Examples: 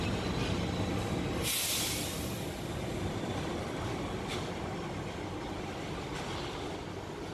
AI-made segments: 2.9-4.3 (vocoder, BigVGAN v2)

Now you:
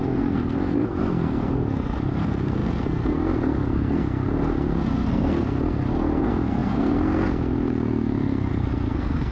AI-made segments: 0.0-9.3 (codec, SNAC)

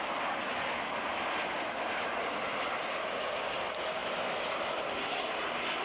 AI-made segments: none

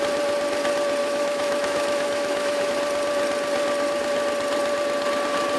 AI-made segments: 1.0-2.7 (autoencoder, DAC-VAE)

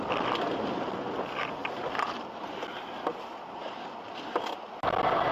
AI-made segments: none